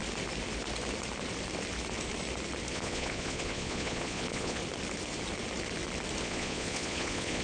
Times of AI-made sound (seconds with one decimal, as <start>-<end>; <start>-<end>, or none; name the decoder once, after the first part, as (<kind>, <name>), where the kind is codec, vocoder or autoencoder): 2.7-4.6 (vocoder, Vocos); 6.2-7.4